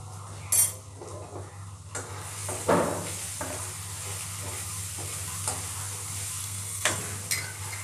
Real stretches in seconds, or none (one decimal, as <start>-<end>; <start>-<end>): 0.0-6.4; 7.0-7.8